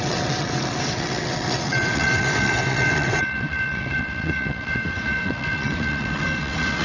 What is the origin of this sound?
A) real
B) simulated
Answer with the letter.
B